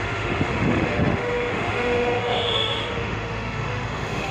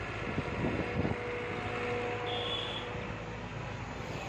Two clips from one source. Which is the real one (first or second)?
second